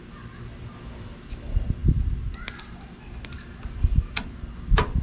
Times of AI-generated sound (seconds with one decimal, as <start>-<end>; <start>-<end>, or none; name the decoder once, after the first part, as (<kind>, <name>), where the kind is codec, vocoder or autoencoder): none